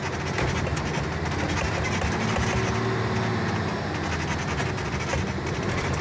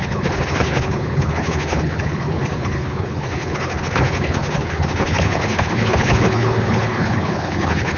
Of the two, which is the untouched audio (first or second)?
first